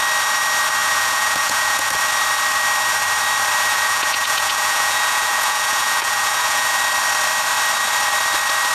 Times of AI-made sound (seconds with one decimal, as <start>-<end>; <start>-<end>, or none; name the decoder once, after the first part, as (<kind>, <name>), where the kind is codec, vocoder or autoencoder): 0.8-1.9 (vocoder, Vocos); 3.7-6.8